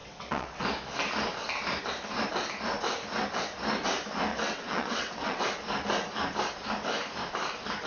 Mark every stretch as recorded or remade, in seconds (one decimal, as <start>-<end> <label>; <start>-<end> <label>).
0.0-0.6 remade; 0.6-4.3 recorded; 4.3-5.4 remade; 5.4-7.9 recorded